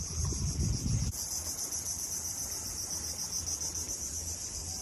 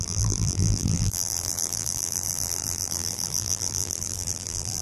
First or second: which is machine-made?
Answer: second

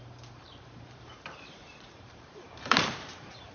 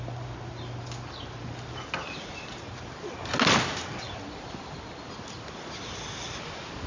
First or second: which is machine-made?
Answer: first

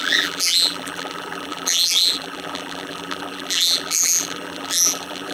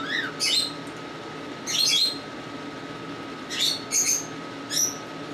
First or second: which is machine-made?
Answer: first